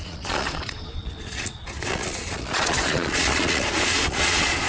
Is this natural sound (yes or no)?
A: no